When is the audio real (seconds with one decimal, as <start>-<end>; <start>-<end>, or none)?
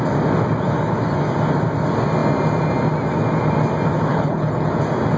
0.0-4.1; 4.7-5.2